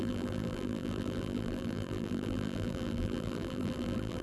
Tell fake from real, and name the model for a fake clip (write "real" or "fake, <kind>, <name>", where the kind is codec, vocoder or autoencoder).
fake, vocoder, BigVGAN v2